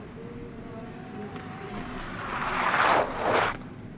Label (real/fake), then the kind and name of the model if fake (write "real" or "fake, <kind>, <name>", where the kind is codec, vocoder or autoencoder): real